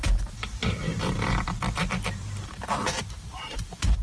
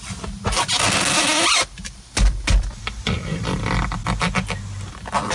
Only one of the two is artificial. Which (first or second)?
first